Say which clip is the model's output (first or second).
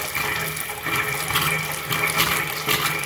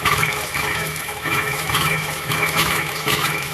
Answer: second